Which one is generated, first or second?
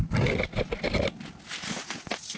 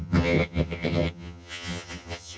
second